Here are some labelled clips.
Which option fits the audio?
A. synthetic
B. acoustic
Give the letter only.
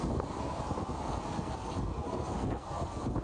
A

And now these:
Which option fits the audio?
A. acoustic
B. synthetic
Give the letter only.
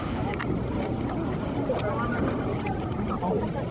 A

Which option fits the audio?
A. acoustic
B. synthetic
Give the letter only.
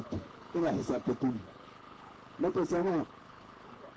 B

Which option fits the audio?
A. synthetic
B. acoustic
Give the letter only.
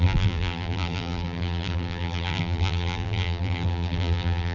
A